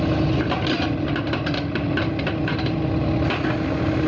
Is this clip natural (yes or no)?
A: yes